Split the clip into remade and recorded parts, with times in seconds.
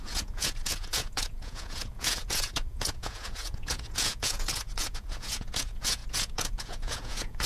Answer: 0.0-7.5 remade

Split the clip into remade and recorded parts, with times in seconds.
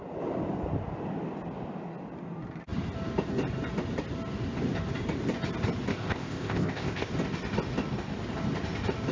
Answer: 0.0-5.9 recorded; 5.9-7.1 remade; 7.1-9.1 recorded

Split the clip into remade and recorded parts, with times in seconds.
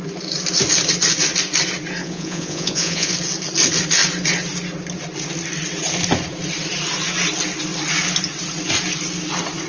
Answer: 0.0-2.0 recorded; 2.0-3.1 remade; 3.1-9.7 recorded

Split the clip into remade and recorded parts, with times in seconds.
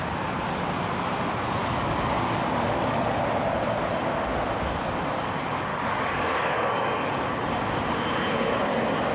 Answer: 0.0-1.6 recorded; 1.6-3.2 remade; 3.2-5.7 recorded; 5.7-7.1 remade; 7.1-9.1 recorded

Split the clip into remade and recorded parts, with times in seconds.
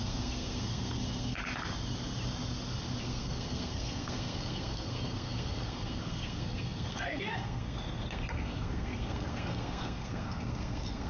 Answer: 0.0-1.4 remade; 1.4-3.0 recorded; 3.0-11.1 remade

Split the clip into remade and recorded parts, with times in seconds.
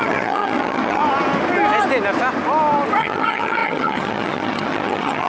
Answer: 0.0-1.0 remade; 1.0-3.0 recorded; 3.0-5.3 remade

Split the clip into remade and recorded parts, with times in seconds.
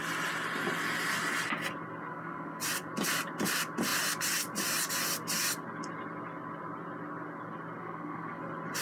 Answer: 0.0-2.1 recorded; 2.1-2.6 remade; 2.6-7.8 recorded; 7.8-8.4 remade; 8.4-8.8 recorded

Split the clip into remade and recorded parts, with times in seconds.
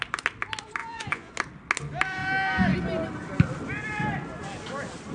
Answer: 0.0-0.8 recorded; 0.8-1.3 remade; 1.3-5.1 recorded